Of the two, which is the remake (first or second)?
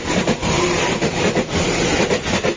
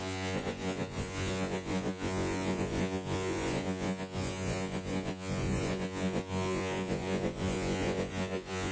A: second